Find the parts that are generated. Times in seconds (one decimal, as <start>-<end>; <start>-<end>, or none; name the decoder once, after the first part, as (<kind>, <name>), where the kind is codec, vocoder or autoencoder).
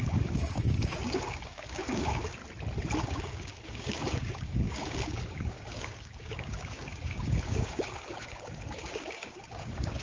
0.0-2.4 (codec, DAC); 3.0-10.0